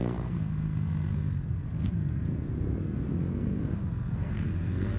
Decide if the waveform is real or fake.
fake